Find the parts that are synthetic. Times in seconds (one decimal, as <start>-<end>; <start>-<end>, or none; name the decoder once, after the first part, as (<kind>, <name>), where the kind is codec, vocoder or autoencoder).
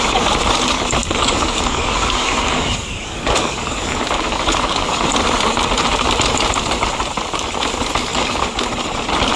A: 1.0-5.1 (codec, DAC); 8.1-8.7